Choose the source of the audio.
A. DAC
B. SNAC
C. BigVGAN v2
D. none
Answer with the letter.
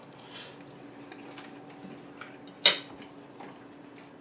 D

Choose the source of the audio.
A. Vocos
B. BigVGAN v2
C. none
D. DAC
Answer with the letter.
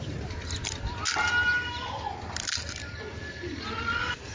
C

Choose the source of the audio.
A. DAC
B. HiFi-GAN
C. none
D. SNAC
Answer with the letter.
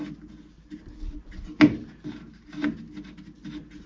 C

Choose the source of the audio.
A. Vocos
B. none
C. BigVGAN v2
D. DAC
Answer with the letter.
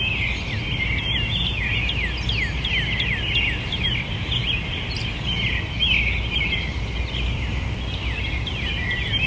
B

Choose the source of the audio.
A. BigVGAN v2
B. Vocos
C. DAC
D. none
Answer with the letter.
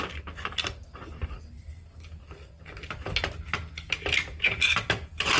D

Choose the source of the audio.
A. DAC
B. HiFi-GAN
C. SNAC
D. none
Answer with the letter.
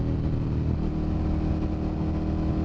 D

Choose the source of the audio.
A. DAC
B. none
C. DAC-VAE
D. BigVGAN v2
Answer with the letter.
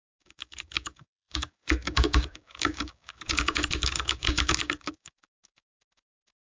A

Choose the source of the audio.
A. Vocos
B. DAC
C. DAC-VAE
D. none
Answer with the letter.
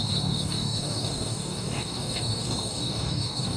B